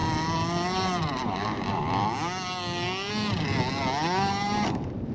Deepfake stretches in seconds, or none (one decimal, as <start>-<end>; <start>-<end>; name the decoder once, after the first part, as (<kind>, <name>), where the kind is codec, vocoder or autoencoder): none